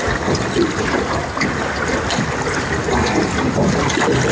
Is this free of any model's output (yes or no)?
yes